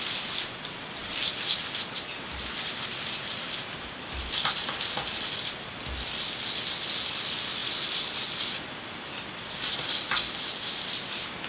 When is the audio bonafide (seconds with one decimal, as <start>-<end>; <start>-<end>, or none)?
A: 0.0-11.5